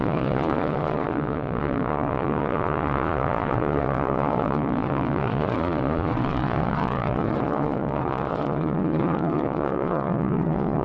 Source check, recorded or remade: remade